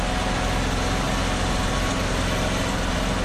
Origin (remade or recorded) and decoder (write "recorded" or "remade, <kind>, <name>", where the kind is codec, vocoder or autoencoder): recorded